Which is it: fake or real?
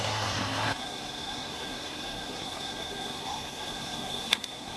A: fake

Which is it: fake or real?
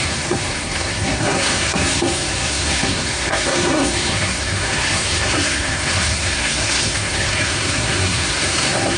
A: fake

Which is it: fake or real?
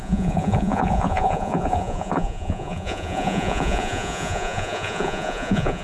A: fake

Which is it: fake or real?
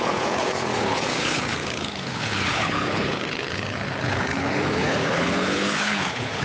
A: fake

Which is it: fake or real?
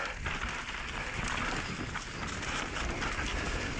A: real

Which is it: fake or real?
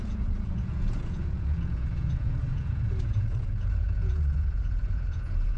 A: fake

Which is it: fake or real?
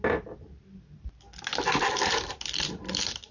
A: real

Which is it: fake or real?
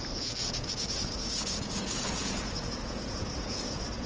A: fake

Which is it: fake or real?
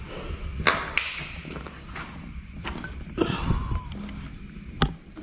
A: real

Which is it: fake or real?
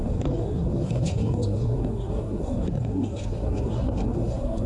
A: fake